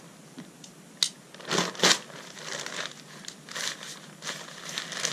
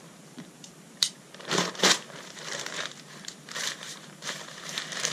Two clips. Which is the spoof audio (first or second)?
second